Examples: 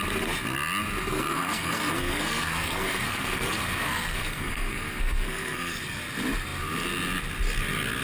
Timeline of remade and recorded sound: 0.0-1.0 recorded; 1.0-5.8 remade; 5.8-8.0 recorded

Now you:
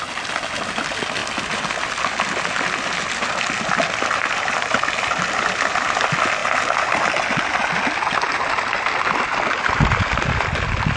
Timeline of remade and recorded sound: 0.0-11.0 recorded

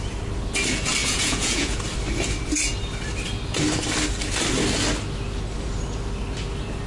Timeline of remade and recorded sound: 0.0-1.0 recorded; 1.0-1.8 remade; 1.8-6.9 recorded

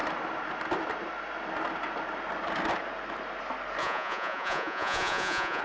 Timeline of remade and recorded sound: 0.0-3.8 recorded; 3.8-5.6 remade